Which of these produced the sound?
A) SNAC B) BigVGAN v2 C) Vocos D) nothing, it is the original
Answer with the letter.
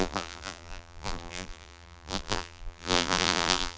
B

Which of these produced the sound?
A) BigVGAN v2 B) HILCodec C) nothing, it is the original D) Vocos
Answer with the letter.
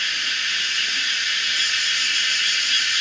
A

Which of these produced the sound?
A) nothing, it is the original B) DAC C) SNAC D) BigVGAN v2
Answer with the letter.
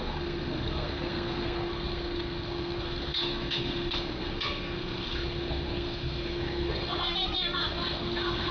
C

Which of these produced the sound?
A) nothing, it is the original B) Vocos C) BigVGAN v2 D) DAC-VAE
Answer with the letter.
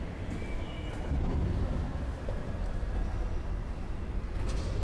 A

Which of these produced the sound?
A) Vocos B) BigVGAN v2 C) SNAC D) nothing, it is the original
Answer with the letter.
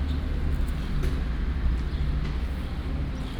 D